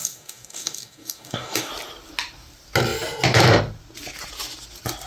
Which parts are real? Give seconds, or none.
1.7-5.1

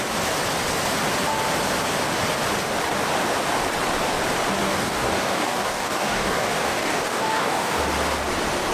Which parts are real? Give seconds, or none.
0.0-4.6; 7.8-8.7